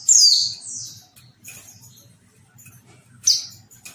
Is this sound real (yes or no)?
yes